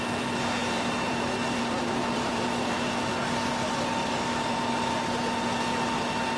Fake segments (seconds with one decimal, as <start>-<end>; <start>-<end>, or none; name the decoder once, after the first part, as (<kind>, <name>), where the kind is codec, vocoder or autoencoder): 0.6-3.1 (vocoder, BigVGAN v2); 4.0-4.6